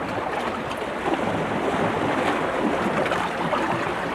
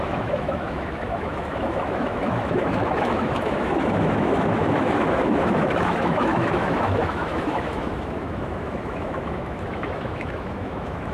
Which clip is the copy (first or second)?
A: second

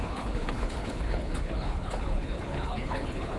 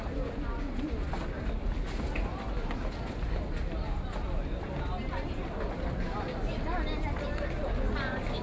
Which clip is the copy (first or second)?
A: first